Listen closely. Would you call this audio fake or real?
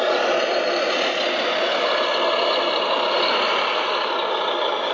real